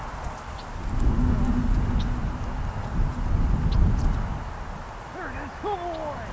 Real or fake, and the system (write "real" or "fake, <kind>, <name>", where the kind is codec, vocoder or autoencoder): real